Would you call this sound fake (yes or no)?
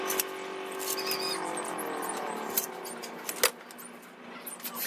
no